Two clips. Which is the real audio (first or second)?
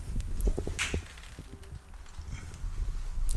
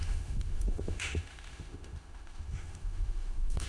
first